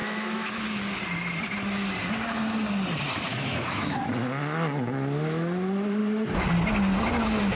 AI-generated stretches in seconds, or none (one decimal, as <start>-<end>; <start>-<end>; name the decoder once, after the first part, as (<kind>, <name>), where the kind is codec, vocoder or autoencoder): 0.0-0.8 (autoencoder, DAC-VAE); 3.3-4.0

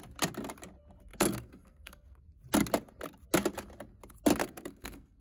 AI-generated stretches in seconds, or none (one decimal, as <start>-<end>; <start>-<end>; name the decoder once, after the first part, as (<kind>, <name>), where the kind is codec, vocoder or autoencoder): 1.1-2.2 (codec, SNAC); 4.4-5.2

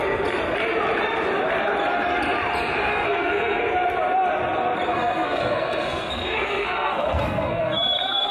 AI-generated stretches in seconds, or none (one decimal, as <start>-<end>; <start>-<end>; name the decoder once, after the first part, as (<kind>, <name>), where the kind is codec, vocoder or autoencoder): 2.9-3.6 (codec, SNAC); 4.9-8.3

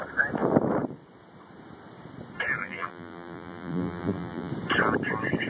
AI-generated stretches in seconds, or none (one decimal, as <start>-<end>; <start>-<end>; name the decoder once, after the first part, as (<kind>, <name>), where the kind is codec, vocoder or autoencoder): 2.6-4.5 (vocoder, BigVGAN v2)

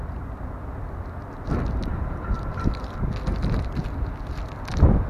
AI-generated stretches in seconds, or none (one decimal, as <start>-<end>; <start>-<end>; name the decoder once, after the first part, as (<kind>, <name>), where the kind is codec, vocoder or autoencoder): 1.9-2.9 (vocoder, BigVGAN v2); 3.3-3.8